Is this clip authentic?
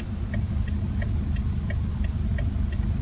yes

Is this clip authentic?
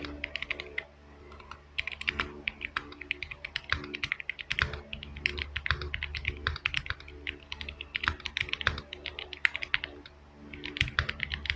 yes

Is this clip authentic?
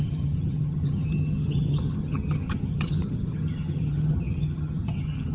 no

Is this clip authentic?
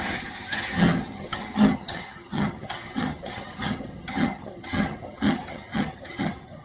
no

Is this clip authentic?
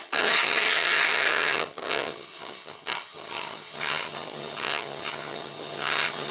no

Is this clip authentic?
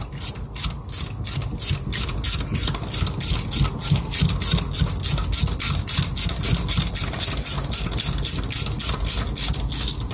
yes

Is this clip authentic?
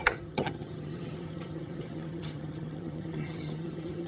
no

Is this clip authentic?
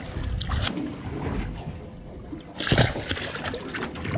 yes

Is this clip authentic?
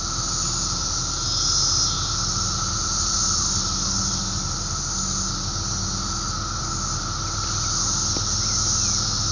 yes